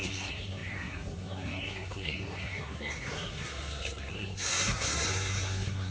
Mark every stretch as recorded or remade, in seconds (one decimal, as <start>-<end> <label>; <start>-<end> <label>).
0.0-5.9 remade